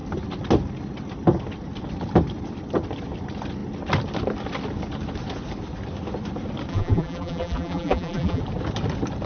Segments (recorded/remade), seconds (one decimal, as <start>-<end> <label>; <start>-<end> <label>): 0.0-6.7 recorded; 6.7-8.4 remade; 8.4-9.3 recorded

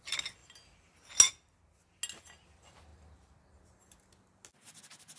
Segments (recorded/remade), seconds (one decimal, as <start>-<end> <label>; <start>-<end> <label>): 0.0-5.2 recorded

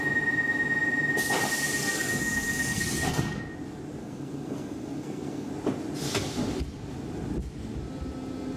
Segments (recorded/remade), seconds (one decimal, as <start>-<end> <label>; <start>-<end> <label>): 0.0-1.8 recorded; 1.8-3.4 remade; 3.4-4.0 recorded; 4.0-5.5 remade; 5.5-8.6 recorded

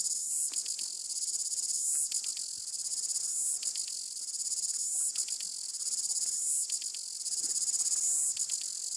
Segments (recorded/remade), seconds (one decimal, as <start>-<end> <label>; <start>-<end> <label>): 0.0-9.0 recorded

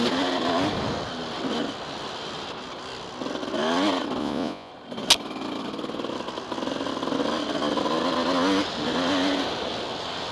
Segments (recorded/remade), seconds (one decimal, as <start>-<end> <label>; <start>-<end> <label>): 0.0-4.2 recorded; 4.2-4.7 remade; 4.7-10.3 recorded